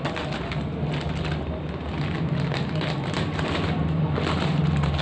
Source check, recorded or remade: recorded